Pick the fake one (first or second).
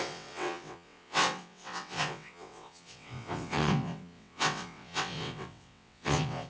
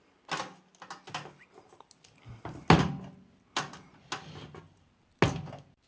first